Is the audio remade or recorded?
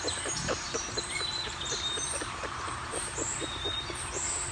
remade